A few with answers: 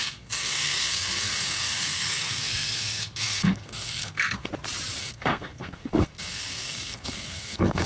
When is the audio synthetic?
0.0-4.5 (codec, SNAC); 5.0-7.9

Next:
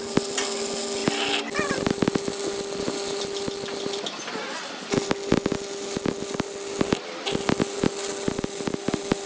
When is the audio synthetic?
none

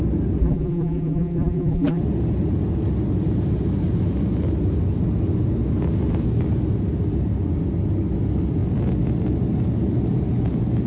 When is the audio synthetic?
0.4-2.0 (vocoder, BigVGAN v2)

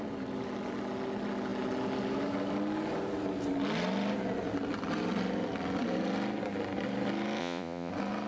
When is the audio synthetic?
7.4-7.9 (vocoder, Vocos)

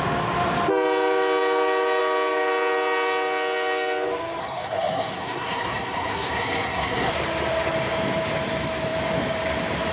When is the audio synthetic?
4.4-7.1 (codec, SNAC)

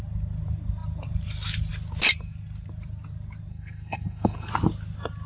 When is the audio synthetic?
3.5-4.5 (codec, SNAC)

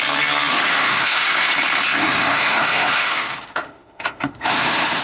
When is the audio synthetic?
0.5-1.5 (autoencoder, DAC-VAE); 1.9-5.0